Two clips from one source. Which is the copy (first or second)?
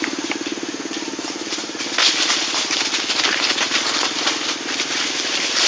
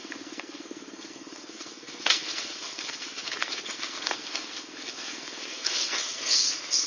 second